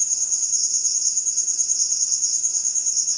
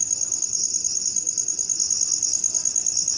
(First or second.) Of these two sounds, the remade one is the first